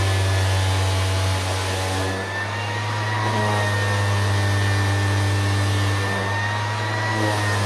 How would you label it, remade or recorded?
recorded